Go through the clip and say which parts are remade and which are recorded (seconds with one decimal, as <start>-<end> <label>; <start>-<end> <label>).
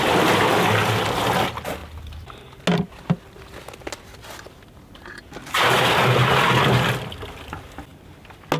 0.0-8.6 recorded